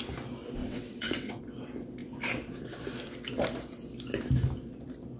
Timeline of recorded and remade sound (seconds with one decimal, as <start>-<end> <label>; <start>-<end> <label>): 0.0-0.6 recorded; 0.6-1.4 remade; 1.4-5.2 recorded